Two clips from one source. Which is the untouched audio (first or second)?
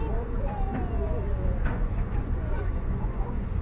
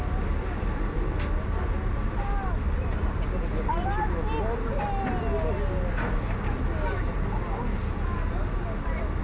second